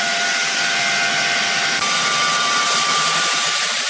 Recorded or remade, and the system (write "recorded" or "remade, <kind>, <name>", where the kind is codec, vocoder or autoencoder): remade, vocoder, BigVGAN v2